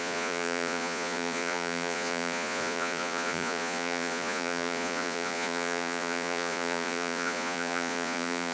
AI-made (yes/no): yes